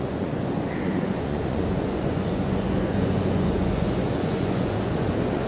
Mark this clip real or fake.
fake